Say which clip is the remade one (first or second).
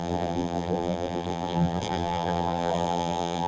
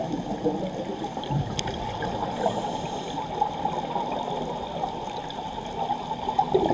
first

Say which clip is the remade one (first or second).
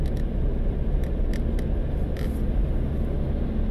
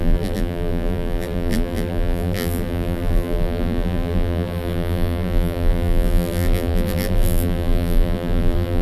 second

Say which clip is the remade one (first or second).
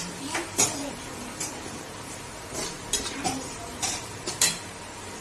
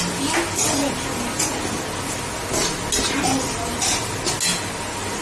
first